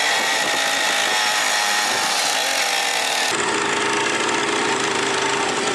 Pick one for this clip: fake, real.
real